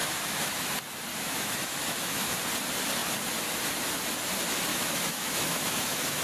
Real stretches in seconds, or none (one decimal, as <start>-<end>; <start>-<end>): 0.7-1.1; 2.3-4.7